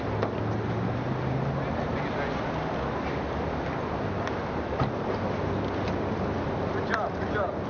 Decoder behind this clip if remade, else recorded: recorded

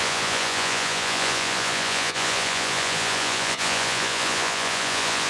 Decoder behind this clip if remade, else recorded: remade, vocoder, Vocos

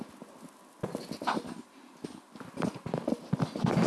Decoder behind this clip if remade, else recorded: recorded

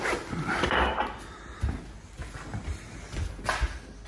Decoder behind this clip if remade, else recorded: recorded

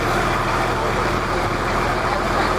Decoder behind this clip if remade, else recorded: remade, vocoder, BigVGAN v2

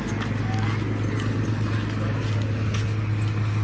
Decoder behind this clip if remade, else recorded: recorded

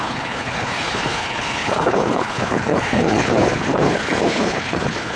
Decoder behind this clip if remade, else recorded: remade, codec, HILCodec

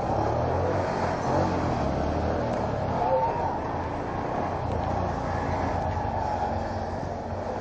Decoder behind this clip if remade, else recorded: recorded